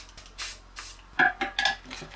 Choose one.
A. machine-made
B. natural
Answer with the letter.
B